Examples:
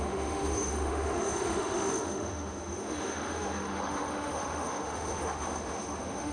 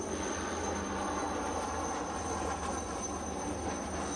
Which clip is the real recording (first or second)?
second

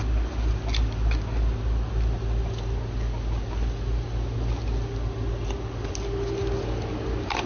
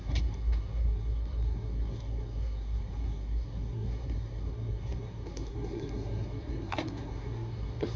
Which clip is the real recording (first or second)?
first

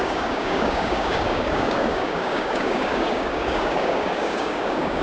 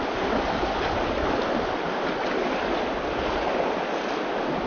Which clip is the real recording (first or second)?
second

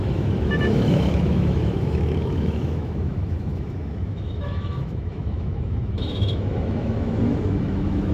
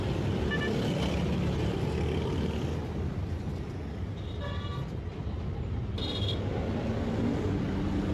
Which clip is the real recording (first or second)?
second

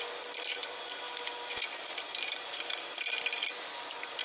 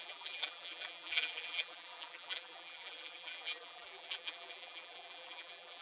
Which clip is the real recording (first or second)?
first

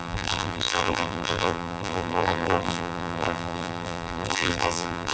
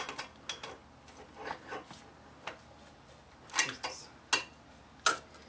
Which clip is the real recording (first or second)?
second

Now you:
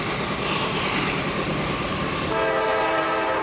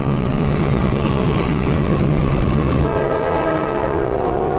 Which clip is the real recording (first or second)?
first